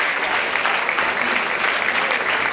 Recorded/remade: recorded